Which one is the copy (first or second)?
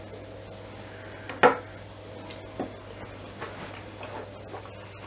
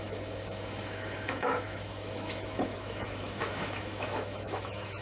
second